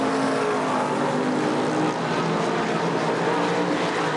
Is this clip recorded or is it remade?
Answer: recorded